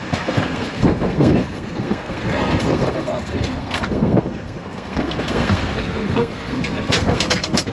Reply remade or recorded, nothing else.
remade